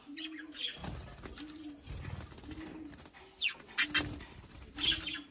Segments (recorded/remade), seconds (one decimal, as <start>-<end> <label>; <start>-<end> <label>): 0.0-0.8 remade; 0.8-4.0 recorded; 4.0-5.3 remade